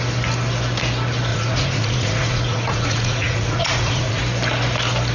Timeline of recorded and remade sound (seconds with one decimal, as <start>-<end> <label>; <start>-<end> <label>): 0.0-1.3 recorded; 1.3-4.2 remade; 4.2-5.1 recorded